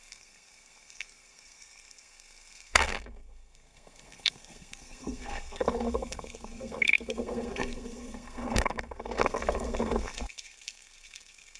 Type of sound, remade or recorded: remade